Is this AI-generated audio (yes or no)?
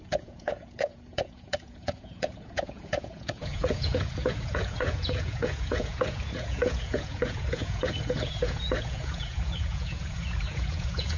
yes